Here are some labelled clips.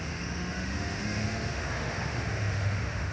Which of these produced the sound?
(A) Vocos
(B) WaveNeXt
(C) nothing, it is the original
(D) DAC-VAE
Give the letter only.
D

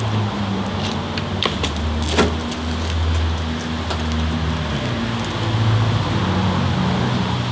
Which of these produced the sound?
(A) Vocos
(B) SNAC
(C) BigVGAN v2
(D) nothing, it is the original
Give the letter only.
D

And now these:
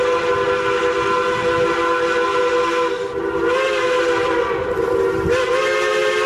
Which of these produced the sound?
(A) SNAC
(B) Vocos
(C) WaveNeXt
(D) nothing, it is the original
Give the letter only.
D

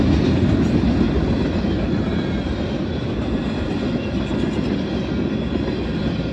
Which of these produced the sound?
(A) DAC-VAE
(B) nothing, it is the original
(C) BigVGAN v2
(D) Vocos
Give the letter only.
B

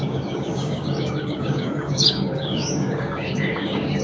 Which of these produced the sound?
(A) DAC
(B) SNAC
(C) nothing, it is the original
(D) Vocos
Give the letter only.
A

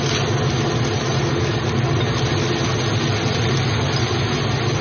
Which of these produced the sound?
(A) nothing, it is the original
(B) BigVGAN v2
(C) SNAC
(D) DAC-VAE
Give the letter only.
A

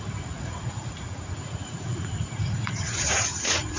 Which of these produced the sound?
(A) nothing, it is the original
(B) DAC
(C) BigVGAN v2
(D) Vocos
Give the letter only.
D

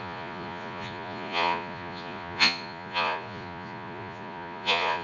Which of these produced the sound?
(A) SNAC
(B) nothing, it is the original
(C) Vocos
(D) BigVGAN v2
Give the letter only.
C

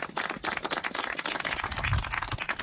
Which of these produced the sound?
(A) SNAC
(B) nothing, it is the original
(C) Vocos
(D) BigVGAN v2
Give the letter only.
B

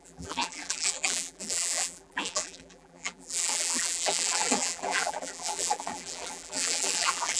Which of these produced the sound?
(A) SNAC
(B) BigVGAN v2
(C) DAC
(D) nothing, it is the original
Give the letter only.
B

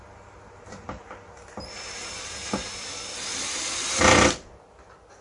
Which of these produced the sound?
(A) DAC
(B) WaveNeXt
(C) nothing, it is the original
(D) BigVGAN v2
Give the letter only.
C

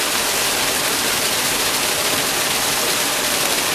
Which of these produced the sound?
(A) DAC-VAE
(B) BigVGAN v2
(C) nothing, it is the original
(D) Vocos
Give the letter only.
C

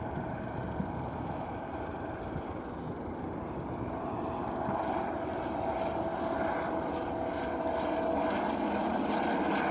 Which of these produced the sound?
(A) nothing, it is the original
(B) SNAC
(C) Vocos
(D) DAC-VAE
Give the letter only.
A